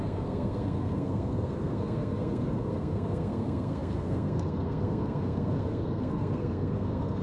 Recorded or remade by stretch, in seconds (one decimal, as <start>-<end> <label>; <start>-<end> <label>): 0.0-7.2 remade